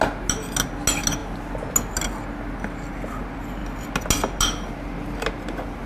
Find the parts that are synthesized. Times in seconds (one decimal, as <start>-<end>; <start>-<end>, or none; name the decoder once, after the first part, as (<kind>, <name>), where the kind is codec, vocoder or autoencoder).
none